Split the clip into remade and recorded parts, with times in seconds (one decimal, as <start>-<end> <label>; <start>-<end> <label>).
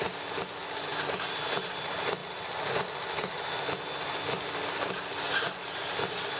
0.0-6.4 recorded